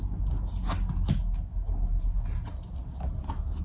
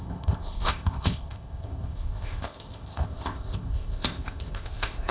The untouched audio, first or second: first